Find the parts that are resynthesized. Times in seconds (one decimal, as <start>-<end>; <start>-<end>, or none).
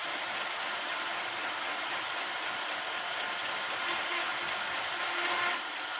0.0-3.6